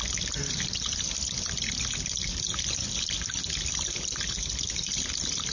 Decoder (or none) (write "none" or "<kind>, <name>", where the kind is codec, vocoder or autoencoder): none